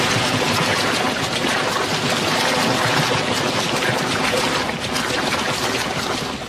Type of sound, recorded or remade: recorded